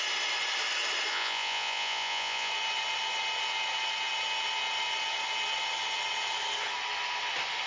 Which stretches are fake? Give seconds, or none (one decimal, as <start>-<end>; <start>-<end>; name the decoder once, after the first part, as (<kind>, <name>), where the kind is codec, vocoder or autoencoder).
1.1-2.5 (vocoder, Vocos)